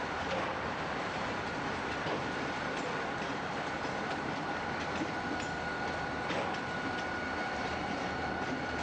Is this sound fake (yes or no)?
yes